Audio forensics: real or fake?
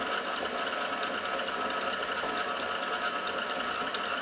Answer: real